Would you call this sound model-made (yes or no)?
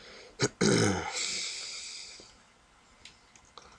no